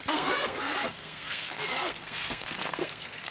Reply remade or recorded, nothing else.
remade